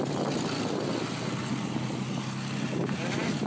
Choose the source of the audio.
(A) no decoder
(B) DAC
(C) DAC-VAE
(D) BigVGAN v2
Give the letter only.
A